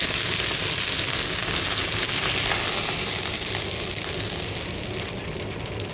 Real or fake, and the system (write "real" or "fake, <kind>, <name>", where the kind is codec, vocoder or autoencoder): real